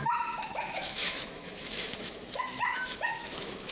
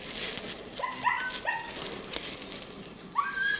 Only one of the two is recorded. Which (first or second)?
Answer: second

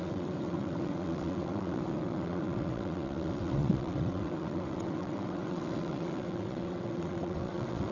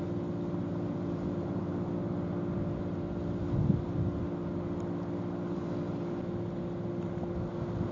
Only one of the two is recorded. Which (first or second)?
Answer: second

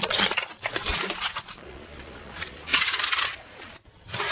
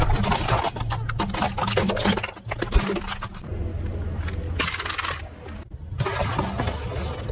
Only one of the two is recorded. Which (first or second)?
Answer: second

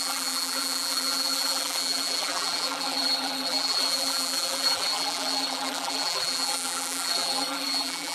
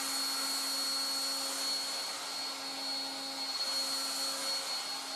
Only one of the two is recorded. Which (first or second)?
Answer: second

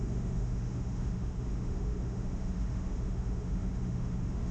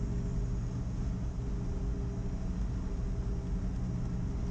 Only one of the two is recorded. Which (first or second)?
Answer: second